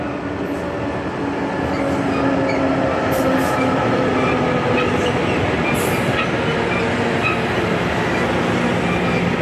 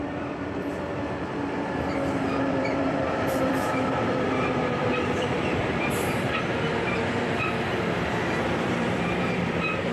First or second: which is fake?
second